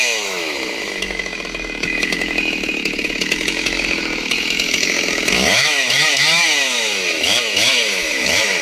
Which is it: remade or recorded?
remade